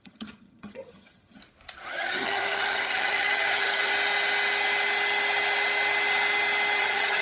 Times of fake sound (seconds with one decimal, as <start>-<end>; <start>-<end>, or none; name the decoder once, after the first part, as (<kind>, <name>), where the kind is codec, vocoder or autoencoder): 0.0-1.4 (vocoder, HiFi-GAN); 1.9-3.9; 6.8-7.2